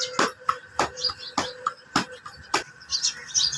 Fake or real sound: real